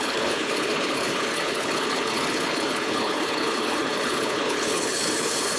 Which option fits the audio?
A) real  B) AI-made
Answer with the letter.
B